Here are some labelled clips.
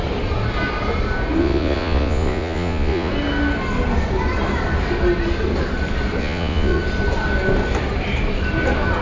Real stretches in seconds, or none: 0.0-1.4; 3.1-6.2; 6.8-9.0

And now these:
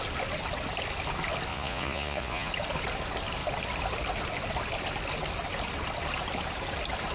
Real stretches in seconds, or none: 0.0-1.5; 2.5-7.1